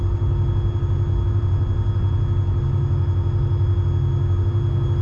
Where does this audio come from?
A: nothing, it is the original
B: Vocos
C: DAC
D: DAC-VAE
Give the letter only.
A